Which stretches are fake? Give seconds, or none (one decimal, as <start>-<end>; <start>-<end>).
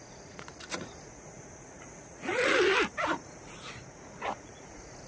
0.0-2.5; 3.1-5.1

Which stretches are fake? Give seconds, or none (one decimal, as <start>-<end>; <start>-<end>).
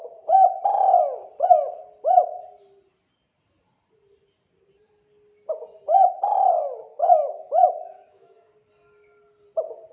6.9-8.5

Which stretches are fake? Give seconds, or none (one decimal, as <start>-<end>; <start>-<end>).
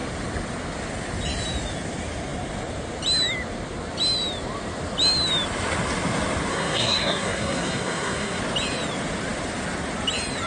6.5-8.4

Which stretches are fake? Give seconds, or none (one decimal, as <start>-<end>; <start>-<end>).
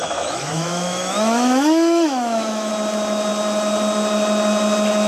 0.0-2.7